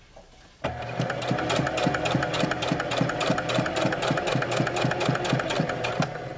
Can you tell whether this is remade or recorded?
recorded